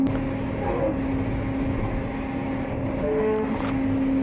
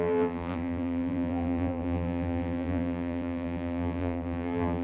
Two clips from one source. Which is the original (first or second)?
first